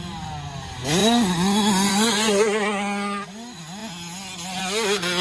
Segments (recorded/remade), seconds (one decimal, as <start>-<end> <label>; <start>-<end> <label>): 0.0-5.2 recorded